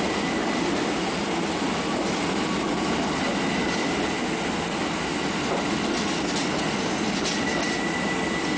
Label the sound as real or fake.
real